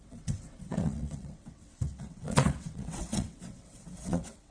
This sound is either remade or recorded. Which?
remade